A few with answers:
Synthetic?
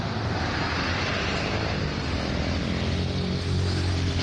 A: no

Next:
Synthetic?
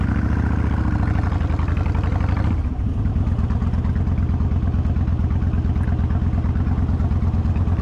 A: no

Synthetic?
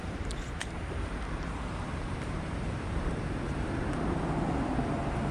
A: yes